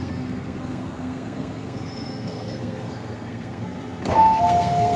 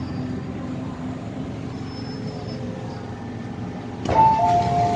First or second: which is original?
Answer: second